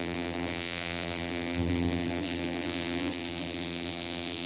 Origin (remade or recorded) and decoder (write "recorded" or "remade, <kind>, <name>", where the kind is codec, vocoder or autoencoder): remade, vocoder, BigVGAN v2